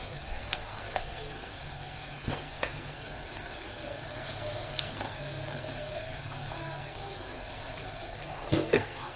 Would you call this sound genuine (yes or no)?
no